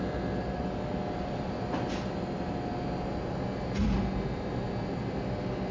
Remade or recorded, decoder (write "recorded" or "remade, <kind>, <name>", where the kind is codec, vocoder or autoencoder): recorded